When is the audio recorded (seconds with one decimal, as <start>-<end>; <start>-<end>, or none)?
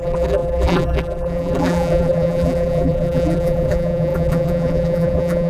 none